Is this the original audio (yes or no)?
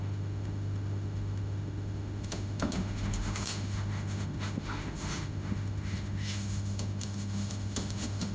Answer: no